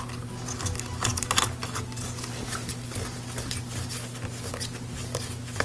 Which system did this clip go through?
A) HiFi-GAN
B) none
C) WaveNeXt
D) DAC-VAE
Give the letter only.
B